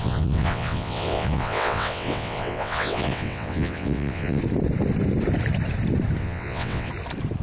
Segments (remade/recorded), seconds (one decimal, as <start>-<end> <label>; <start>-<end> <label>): 0.0-4.4 remade; 4.4-6.2 recorded; 6.2-6.9 remade; 6.9-7.4 recorded